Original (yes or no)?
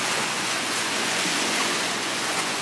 no